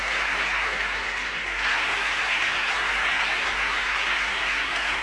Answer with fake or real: fake